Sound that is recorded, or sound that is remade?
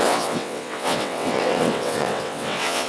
remade